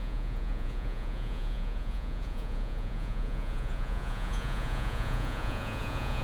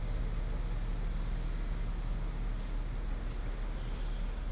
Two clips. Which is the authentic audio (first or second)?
second